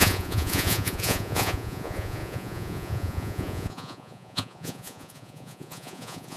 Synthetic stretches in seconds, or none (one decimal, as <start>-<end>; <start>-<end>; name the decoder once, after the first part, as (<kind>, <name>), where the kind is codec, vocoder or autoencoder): 0.0-6.4 (vocoder, Vocos)